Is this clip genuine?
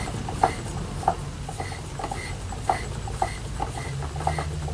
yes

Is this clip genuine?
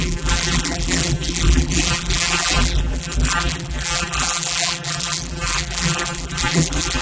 no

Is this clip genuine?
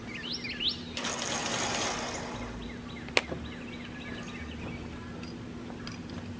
yes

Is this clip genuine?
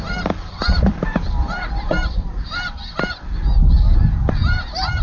no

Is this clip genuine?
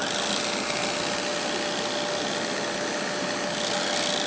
yes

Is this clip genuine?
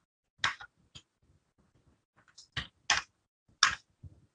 yes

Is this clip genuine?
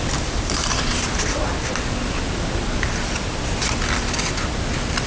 yes